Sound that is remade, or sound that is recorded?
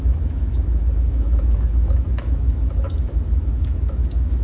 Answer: remade